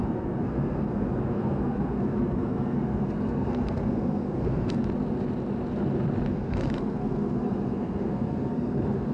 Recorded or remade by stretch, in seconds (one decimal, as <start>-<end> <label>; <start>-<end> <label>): 0.0-4.8 remade; 4.8-6.3 recorded; 6.3-9.1 remade